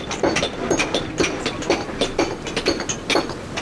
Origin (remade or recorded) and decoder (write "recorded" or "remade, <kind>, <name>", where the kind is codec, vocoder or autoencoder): recorded